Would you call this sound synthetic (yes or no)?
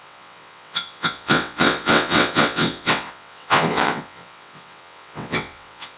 yes